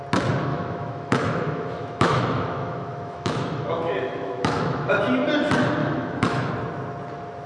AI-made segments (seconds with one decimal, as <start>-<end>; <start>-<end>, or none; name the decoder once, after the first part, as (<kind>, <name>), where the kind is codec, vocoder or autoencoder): 0.5-5.0 (autoencoder, DAC-VAE); 5.8-6.5